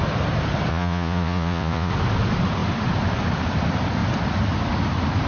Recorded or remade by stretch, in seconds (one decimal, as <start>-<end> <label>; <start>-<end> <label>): 0.0-0.7 recorded; 0.7-1.9 remade; 1.9-5.3 recorded